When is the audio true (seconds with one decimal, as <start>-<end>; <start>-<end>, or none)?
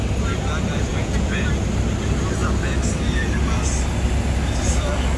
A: 0.0-0.9; 1.5-5.2